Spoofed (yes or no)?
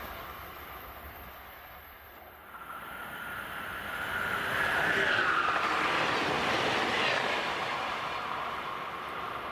no